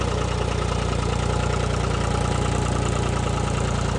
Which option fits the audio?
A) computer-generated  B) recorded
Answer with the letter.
B